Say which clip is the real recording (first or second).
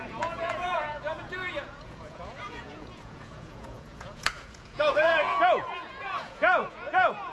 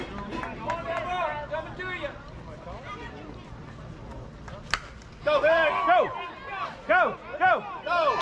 second